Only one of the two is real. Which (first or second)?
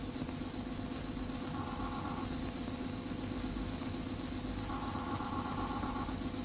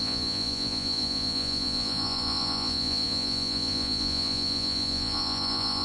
first